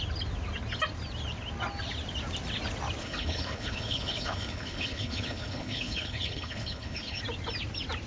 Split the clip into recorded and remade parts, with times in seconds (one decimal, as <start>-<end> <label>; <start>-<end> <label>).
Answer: 0.0-3.0 recorded; 3.0-7.2 remade; 7.2-8.1 recorded